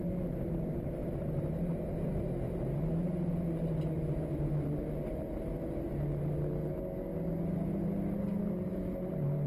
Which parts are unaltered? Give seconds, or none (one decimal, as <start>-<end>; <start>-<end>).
0.0-9.5